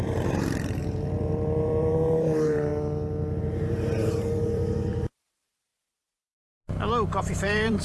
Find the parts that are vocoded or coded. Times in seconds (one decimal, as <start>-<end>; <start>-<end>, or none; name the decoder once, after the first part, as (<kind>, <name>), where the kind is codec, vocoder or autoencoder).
0.0-2.7 (vocoder, BigVGAN v2); 3.4-5.7; 7.2-7.8